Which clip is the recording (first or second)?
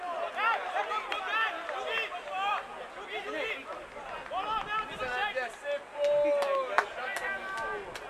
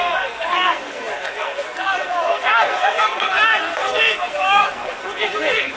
first